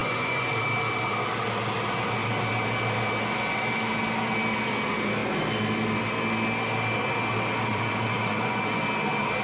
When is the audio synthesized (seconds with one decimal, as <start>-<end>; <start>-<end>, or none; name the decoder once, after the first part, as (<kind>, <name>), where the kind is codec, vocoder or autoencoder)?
0.0-0.5 (vocoder, Vocos); 7.7-8.8